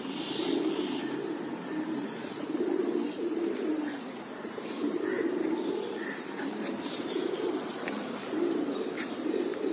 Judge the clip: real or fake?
fake